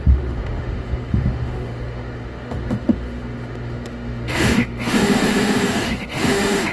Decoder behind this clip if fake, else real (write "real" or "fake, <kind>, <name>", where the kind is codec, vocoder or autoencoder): fake, autoencoder, DAC-VAE